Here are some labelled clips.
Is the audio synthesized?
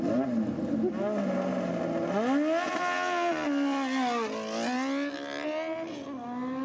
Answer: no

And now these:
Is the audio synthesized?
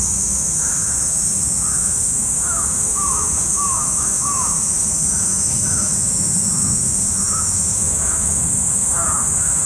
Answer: yes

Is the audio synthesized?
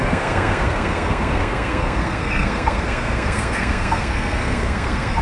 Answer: yes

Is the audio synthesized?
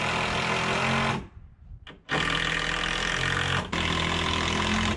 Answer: no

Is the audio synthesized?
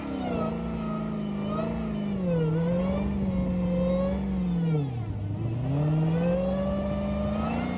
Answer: no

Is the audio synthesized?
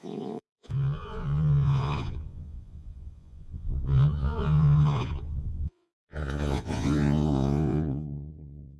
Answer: yes